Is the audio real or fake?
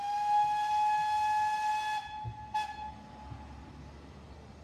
real